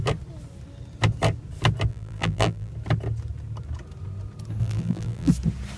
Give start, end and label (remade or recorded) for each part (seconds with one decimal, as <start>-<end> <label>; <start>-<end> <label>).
0.0-1.9 recorded; 1.9-2.7 remade; 2.7-4.6 recorded; 4.6-5.3 remade; 5.3-5.8 recorded